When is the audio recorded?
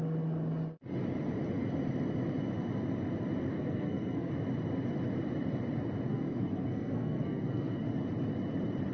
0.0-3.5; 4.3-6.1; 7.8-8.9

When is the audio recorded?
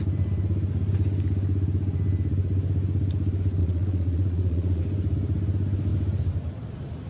0.0-3.6; 4.8-7.1